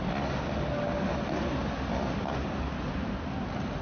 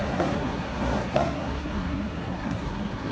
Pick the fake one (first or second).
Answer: second